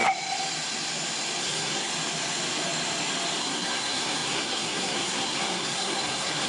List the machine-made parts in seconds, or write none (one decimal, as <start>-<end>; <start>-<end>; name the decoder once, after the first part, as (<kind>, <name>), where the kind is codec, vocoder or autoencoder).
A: 1.4-1.9 (codec, SNAC); 3.4-6.5